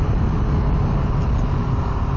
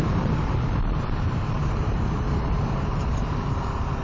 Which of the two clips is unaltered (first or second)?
first